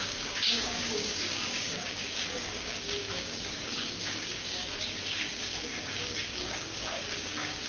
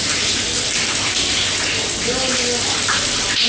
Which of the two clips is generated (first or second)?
first